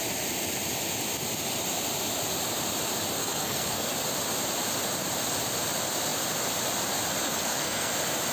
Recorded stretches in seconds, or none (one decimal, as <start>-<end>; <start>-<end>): 0.0-3.2; 3.9-7.2; 7.9-8.3